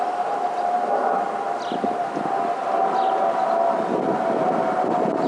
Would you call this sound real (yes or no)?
yes